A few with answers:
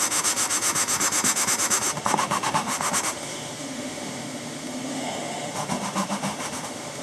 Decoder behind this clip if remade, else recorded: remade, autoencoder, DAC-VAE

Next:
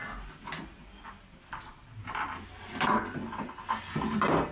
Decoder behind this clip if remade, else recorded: recorded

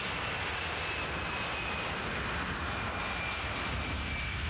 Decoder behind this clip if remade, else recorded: recorded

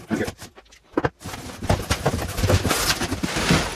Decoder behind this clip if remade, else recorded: recorded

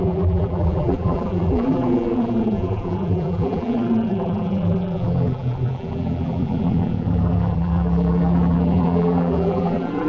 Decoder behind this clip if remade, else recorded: remade, vocoder, BigVGAN v2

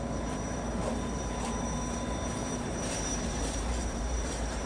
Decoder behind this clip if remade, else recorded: remade, vocoder, BigVGAN v2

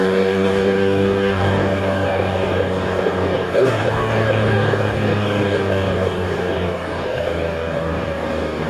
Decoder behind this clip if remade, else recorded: remade, codec, DAC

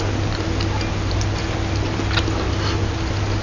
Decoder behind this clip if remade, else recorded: recorded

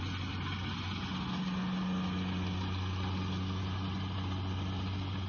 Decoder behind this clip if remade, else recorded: recorded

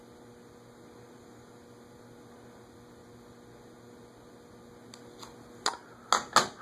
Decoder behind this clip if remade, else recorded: recorded